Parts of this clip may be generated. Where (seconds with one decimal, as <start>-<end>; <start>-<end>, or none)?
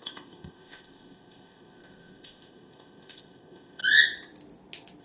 0.0-3.8